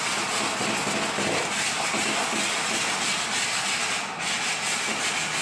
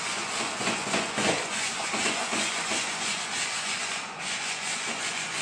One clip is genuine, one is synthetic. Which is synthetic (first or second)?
second